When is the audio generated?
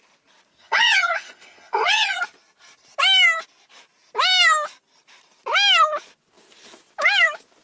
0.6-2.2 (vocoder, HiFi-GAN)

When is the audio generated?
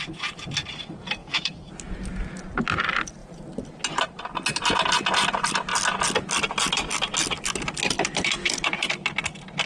1.2-1.7 (autoencoder, DAC-VAE)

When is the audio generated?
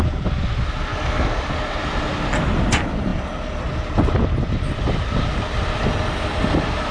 0.9-1.5 (codec, DAC)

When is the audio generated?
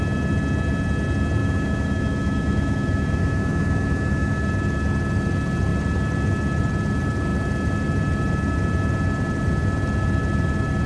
1.4-4.4 (autoencoder, DAC-VAE)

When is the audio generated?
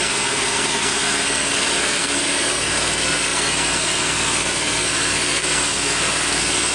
0.0-6.7 (codec, SNAC)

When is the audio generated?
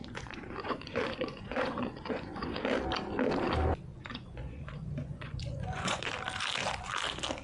0.0-2.6 (vocoder, Vocos); 3.9-6.0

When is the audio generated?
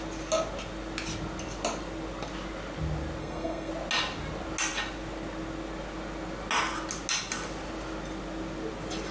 3.2-3.7 (codec, SNAC)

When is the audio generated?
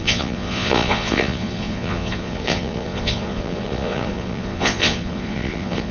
0.0-5.9 (vocoder, Vocos)